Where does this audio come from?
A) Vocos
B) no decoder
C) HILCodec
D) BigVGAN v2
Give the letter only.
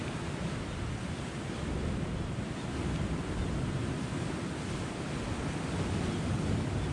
B